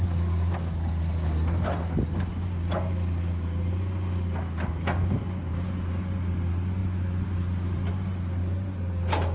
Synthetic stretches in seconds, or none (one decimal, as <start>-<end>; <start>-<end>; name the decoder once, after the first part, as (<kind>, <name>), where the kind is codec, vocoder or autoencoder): none

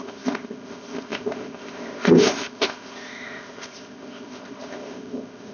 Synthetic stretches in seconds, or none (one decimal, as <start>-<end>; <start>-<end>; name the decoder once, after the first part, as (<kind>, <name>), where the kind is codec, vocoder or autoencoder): 0.0-5.5 (codec, ZipCodec)

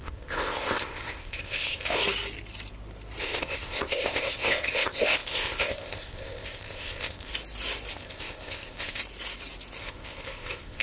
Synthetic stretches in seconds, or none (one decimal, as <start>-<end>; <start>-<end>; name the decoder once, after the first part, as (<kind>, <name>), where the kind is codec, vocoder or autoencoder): 0.0-2.0 (codec, ZipCodec); 3.2-7.3; 7.9-9.0; 9.8-10.8